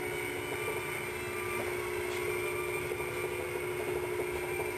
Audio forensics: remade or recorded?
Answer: recorded